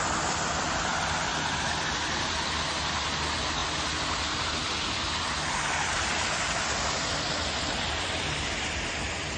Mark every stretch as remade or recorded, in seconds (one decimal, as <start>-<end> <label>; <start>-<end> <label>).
0.0-9.4 recorded